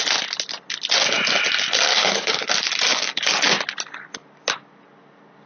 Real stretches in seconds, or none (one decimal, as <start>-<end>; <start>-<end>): 0.0-1.9; 2.5-2.9; 3.5-5.5